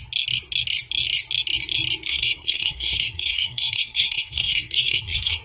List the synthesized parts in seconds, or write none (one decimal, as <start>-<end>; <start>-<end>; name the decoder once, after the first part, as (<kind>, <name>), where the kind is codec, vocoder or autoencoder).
2.1-5.4 (codec, SNAC)